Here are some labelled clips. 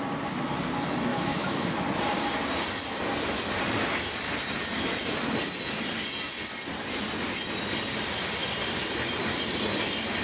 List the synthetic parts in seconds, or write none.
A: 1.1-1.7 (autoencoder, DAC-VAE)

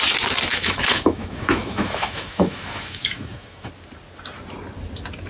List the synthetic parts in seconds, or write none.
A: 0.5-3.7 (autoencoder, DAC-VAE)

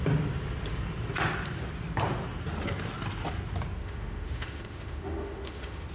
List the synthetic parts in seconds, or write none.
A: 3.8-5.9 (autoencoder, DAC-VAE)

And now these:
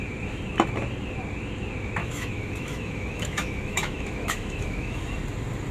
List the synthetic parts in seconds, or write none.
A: 2.0-5.0 (autoencoder, DAC-VAE)

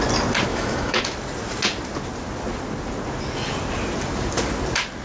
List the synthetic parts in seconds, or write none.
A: 0.5-1.0 (autoencoder, DAC-VAE)

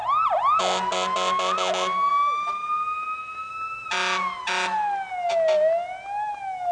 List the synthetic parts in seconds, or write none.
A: 2.1-3.5 (autoencoder, DAC-VAE)

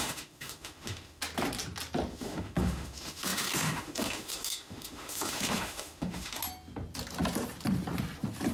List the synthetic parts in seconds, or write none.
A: 0.0-1.2 (autoencoder, DAC-VAE); 2.1-6.4